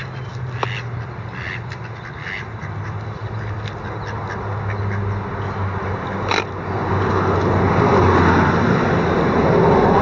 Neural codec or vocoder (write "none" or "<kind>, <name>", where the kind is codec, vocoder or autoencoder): none